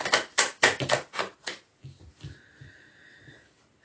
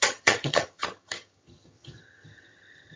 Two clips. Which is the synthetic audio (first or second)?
second